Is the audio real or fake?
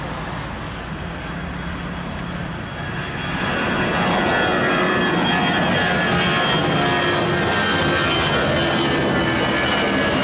real